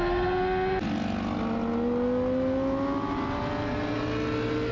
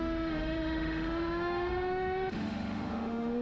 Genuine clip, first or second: first